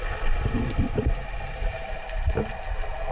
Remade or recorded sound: recorded